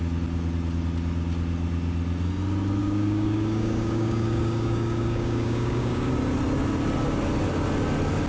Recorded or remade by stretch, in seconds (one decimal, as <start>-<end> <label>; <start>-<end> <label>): 0.0-2.8 recorded; 2.8-6.1 remade; 6.1-8.3 recorded